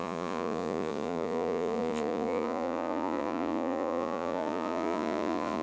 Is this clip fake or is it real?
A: fake